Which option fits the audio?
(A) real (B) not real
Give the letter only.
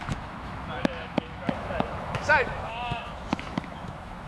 B